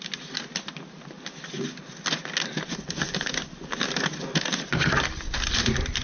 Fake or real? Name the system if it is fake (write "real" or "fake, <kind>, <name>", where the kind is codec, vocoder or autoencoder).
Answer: real